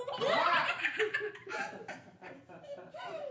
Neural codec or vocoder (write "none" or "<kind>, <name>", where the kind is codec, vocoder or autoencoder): vocoder, BigVGAN v2